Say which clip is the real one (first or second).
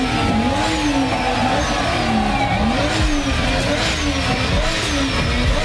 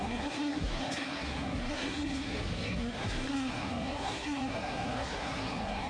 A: first